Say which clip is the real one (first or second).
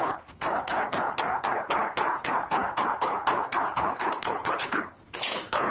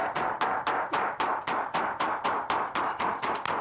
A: second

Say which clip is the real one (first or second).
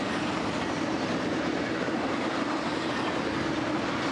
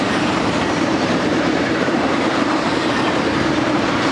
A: first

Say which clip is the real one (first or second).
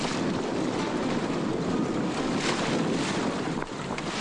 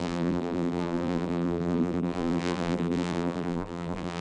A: first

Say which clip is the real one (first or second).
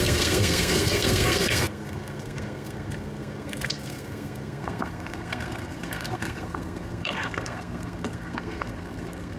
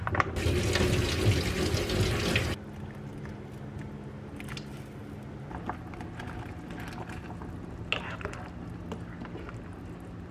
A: second